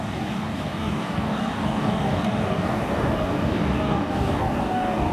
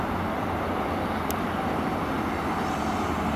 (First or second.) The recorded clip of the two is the second